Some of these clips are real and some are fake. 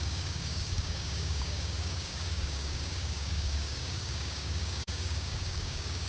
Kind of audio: fake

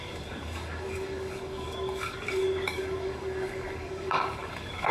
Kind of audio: fake